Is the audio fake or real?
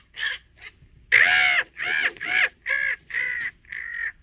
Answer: real